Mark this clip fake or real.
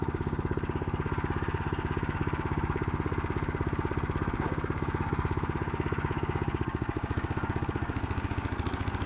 fake